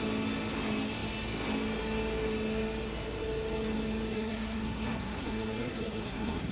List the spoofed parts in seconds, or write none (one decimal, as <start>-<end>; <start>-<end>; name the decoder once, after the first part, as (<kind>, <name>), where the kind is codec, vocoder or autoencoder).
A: 4.1-6.5 (codec, SNAC)